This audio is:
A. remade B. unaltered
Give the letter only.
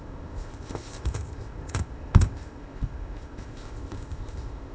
A